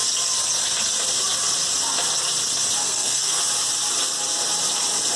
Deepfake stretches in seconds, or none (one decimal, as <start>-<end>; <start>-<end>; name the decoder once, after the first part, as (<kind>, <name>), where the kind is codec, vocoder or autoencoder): 2.8-3.4 (codec, SNAC)